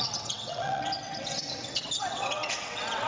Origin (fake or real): fake